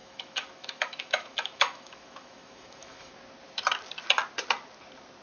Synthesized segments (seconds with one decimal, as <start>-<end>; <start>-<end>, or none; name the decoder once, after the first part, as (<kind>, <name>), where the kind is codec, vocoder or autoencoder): 0.0-3.1 (autoencoder, DAC-VAE)

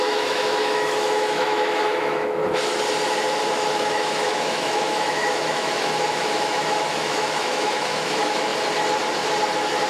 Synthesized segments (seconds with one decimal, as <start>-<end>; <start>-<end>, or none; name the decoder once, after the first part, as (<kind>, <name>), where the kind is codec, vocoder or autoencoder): 0.0-2.4 (autoencoder, DAC-VAE); 3.5-8.5

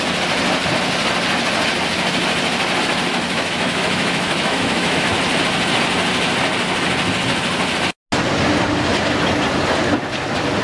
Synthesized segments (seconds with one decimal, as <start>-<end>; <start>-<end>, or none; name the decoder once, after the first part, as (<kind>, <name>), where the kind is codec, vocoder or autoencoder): 3.1-5.1 (autoencoder, DAC-VAE)

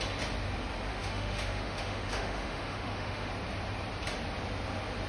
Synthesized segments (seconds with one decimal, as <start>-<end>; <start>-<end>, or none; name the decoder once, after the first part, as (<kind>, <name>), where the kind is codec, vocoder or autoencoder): 0.9-3.3 (autoencoder, DAC-VAE)